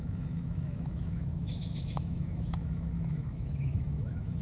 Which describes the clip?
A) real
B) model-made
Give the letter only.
B